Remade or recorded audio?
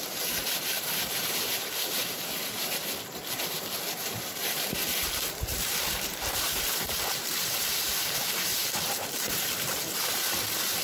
remade